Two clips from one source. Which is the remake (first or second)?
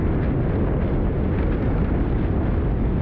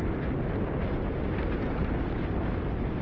second